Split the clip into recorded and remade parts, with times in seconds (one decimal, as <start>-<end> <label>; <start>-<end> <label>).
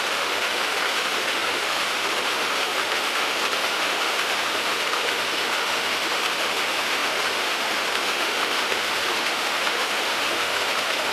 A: 0.0-11.1 remade